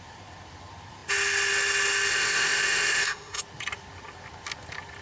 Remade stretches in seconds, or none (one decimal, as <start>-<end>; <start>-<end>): 2.1-3.4